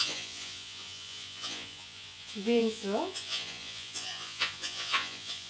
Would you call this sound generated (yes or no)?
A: yes